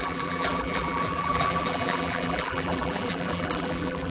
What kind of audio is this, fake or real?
fake